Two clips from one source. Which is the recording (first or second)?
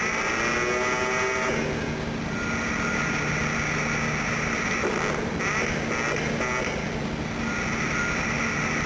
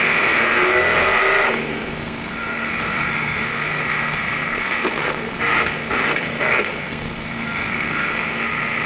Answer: first